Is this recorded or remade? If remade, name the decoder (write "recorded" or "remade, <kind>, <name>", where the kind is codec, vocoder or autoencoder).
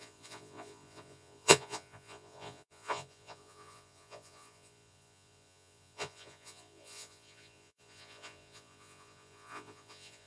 remade, vocoder, Vocos